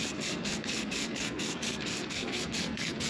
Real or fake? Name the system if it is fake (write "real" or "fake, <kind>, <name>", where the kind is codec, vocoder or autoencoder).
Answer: fake, codec, SNAC